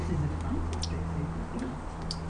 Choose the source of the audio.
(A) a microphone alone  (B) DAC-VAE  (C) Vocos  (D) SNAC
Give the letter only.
A